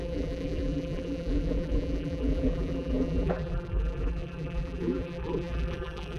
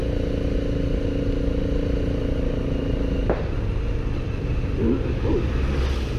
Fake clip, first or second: first